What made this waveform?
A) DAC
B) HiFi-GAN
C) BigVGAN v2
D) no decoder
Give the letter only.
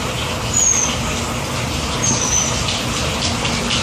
D